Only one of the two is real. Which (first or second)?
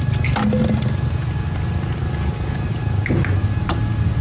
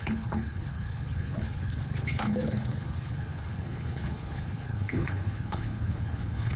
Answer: first